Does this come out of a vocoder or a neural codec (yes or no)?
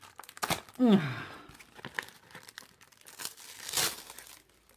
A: no